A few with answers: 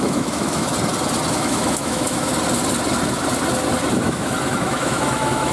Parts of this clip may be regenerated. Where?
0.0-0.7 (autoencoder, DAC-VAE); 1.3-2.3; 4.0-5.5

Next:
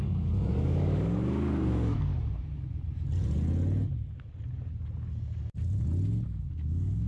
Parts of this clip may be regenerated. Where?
0.0-2.1 (codec, DAC); 6.4-7.1

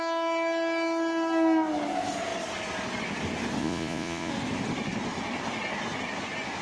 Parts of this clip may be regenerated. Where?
3.6-4.3 (vocoder, Vocos)